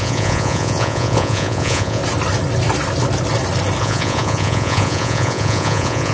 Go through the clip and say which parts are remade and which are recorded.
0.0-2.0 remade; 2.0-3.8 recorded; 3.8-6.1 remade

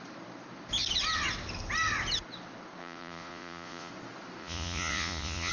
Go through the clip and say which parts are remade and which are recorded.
0.0-2.8 recorded; 2.8-3.9 remade; 3.9-4.4 recorded; 4.4-5.5 remade

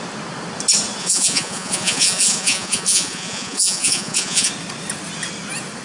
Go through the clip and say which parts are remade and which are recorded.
0.0-1.0 recorded; 1.0-4.5 remade; 4.5-5.8 recorded

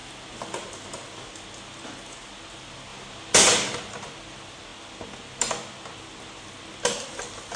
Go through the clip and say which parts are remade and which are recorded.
0.0-7.6 recorded

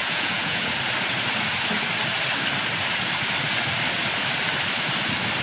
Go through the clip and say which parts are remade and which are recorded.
0.0-0.7 remade; 0.7-5.4 recorded

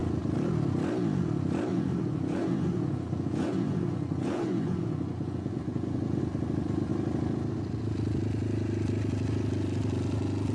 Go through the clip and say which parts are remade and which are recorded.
0.0-1.7 recorded; 1.7-6.2 remade; 6.2-10.5 recorded

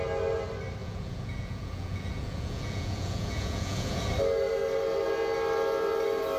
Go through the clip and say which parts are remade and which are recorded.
0.0-0.8 recorded; 0.8-4.1 remade; 4.1-6.4 recorded

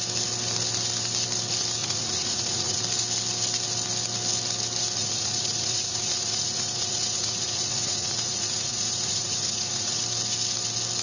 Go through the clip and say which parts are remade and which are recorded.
0.0-1.8 recorded; 1.8-2.8 remade; 2.8-5.0 recorded; 5.0-10.0 remade; 10.0-11.0 recorded